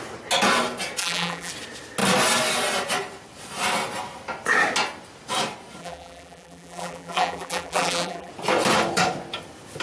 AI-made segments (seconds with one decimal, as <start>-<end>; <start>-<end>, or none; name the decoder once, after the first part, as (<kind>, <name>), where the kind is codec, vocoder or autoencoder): 1.0-1.5 (vocoder, BigVGAN v2); 5.8-8.3